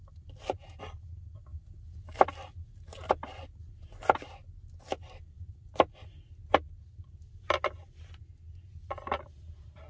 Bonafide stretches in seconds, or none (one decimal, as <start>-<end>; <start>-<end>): 0.0-9.9